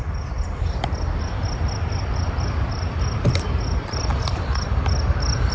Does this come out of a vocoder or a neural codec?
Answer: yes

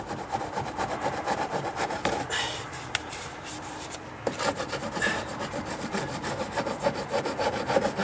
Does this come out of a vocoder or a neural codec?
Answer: yes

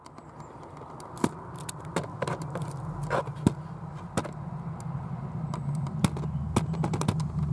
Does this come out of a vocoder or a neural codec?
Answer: no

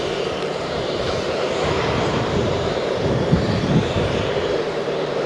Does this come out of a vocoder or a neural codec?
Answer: yes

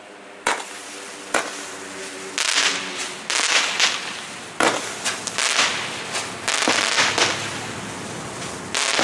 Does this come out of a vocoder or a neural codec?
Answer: no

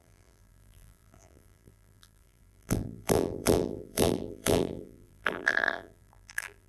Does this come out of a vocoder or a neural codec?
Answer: yes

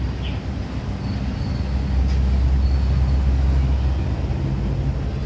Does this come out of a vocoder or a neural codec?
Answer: no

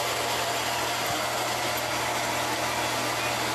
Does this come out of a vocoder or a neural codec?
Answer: no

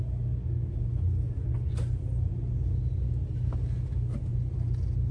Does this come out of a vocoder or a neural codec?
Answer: no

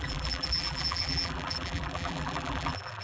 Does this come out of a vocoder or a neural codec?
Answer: yes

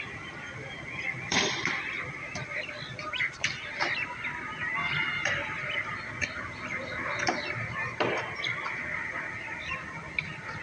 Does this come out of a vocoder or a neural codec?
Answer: yes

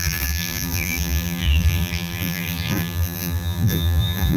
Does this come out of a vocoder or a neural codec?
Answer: yes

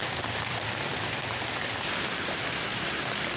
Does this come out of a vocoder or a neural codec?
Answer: yes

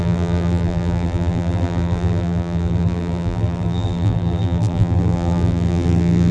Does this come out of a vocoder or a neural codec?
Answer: yes